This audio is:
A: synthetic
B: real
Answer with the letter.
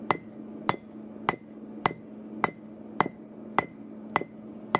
B